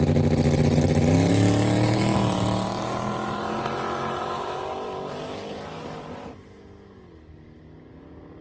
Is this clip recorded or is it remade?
recorded